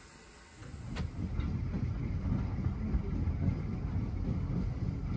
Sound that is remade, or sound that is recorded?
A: recorded